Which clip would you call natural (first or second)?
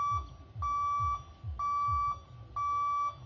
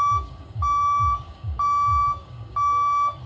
first